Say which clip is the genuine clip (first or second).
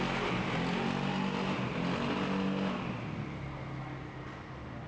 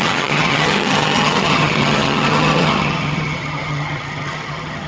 first